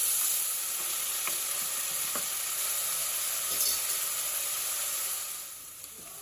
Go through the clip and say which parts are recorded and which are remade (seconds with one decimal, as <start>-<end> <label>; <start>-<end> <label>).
0.0-6.2 recorded